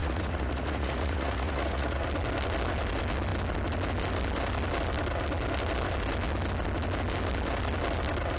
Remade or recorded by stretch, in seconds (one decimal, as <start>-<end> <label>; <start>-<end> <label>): 0.0-2.0 remade; 2.0-8.4 recorded